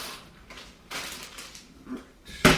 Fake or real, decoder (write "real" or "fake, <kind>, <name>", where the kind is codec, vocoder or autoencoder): fake, vocoder, BigVGAN v2